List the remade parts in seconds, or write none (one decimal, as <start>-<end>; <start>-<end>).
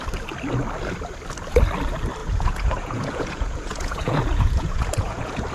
2.2-5.5